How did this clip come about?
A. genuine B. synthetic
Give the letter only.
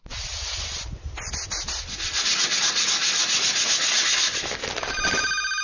A